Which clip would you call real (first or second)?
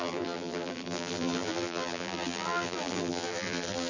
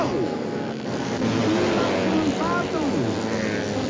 second